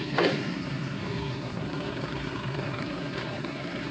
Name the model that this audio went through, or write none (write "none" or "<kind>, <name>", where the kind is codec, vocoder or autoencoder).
codec, SNAC